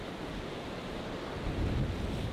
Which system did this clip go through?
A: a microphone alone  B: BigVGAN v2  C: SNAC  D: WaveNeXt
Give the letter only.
A